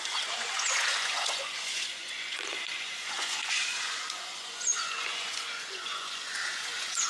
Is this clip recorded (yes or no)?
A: no